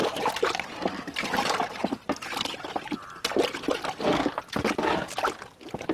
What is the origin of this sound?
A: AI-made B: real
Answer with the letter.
B